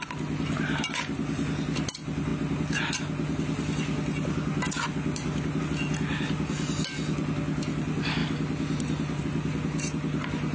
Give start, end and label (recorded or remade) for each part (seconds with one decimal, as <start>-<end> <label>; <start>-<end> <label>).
0.0-10.5 recorded